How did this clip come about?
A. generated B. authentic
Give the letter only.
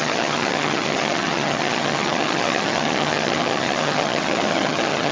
A